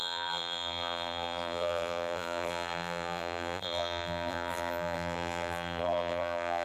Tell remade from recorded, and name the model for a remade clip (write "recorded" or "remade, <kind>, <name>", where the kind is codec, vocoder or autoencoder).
remade, vocoder, BigVGAN v2